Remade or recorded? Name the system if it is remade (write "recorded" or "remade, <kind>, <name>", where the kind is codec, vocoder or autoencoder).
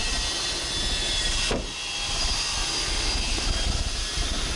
recorded